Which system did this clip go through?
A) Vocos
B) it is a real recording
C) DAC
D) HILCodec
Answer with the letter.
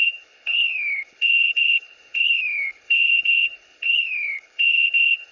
D